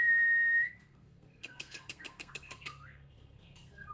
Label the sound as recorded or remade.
remade